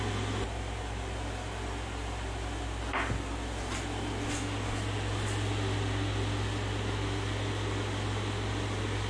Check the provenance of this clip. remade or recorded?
recorded